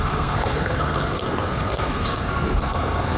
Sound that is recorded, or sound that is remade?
remade